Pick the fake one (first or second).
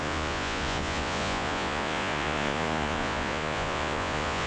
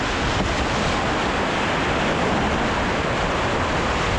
first